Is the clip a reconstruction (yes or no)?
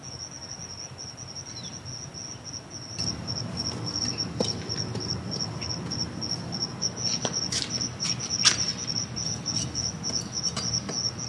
no